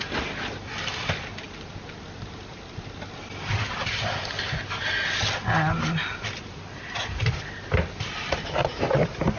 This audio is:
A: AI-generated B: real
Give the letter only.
B